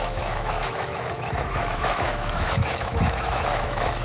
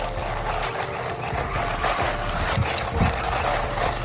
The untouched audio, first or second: second